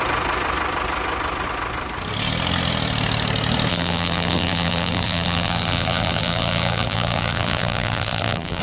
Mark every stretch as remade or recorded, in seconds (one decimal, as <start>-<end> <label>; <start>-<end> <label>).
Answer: 0.0-3.7 recorded; 3.7-8.6 remade